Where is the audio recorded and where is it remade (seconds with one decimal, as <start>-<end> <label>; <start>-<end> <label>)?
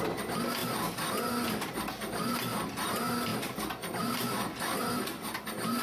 0.0-5.8 recorded